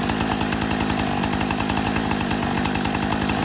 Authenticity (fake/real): real